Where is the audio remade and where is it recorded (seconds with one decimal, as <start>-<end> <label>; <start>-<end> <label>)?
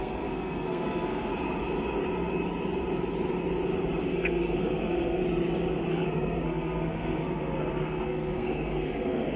0.0-1.3 remade; 1.3-4.0 recorded; 4.0-5.2 remade; 5.2-5.9 recorded; 5.9-9.4 remade